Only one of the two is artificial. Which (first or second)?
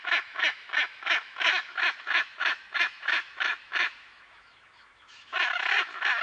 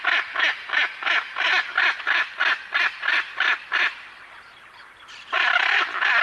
first